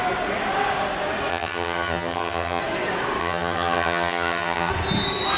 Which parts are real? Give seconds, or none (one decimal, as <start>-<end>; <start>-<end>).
0.0-1.3; 2.6-3.2; 4.7-5.4